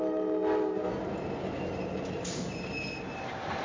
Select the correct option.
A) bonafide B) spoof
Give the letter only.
A